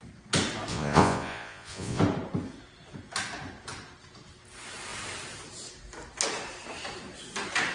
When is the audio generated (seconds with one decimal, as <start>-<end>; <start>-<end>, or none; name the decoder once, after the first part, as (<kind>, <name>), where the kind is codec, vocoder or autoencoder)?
0.7-2.0 (vocoder, Vocos)